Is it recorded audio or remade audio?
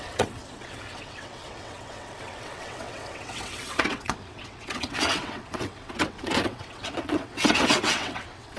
remade